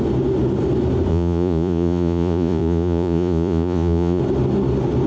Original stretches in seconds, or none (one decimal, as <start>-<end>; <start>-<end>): 0.0-1.1; 4.2-5.1